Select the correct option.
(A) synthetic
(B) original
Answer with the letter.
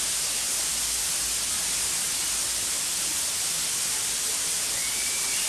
B